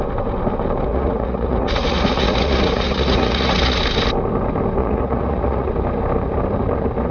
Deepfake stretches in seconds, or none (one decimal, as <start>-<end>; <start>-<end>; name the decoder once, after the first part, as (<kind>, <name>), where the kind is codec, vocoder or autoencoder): 0.9-3.8 (vocoder, Vocos); 4.8-5.7